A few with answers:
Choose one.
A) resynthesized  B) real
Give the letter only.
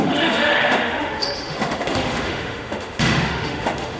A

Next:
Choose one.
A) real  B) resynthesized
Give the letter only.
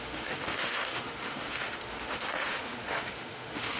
B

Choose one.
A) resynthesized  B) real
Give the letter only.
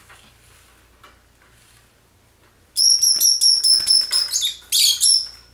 B